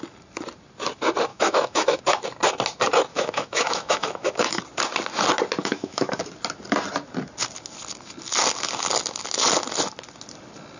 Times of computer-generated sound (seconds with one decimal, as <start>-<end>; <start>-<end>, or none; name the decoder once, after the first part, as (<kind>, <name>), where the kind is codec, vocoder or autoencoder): 1.3-2.0 (autoencoder, DAC-VAE); 3.1-4.6; 5.6-6.2